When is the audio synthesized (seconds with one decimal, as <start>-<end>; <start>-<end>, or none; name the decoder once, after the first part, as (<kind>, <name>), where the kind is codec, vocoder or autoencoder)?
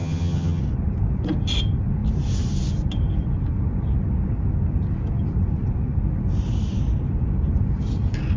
0.0-0.6 (vocoder, HiFi-GAN)